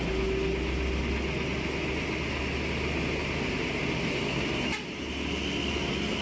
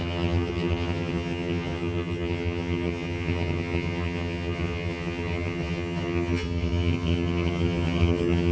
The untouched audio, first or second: first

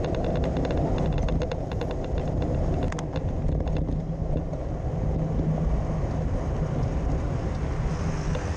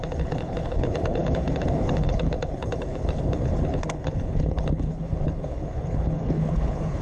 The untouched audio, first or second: first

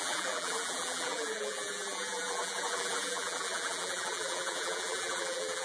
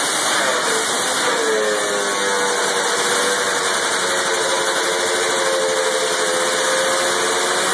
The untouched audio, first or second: second